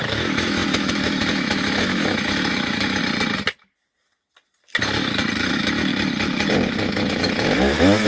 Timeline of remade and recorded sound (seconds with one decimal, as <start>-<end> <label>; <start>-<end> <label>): 0.0-3.0 remade; 3.0-5.5 recorded; 5.5-5.9 remade; 5.9-6.8 recorded; 6.8-8.1 remade